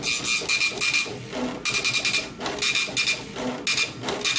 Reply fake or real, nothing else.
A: real